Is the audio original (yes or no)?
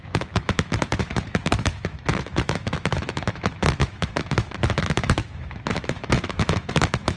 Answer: no